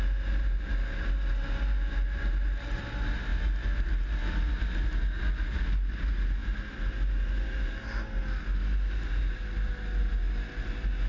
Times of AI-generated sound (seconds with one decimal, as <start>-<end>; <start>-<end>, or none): none